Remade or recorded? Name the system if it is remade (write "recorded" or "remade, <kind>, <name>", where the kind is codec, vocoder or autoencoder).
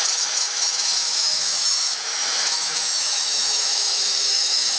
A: remade, autoencoder, DAC-VAE